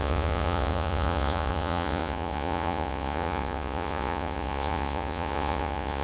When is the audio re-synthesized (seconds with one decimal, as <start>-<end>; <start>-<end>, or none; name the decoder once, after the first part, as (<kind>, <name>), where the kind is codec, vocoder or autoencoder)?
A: 0.0-6.0 (vocoder, Vocos)